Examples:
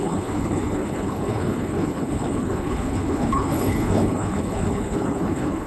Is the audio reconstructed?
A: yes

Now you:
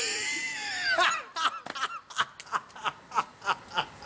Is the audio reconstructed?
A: no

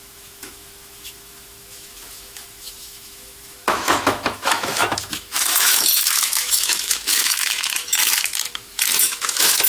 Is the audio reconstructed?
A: yes